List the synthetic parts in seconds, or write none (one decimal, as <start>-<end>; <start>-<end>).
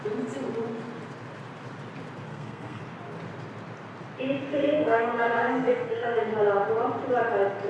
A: 2.3-2.8; 4.5-6.3